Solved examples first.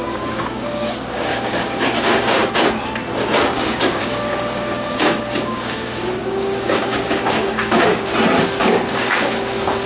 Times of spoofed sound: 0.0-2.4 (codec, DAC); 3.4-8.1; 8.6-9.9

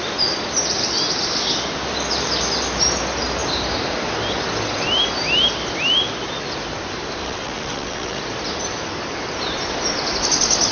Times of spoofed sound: 7.2-8.2 (vocoder, WaveNeXt)

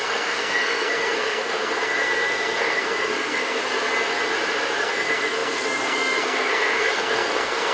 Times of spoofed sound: 0.0-3.6 (codec, SNAC); 4.8-7.7